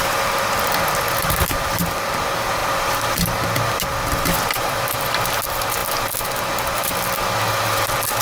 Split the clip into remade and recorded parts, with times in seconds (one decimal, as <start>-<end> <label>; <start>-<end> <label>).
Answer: 0.0-8.2 recorded